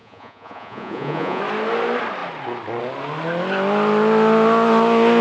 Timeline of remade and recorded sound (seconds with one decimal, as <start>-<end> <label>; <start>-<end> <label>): 0.0-1.4 remade; 1.4-5.2 recorded